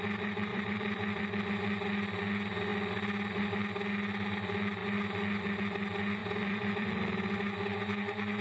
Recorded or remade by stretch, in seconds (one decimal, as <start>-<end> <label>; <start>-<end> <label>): 0.0-0.5 recorded; 0.5-1.2 remade; 1.2-6.2 recorded; 6.2-6.9 remade; 6.9-8.4 recorded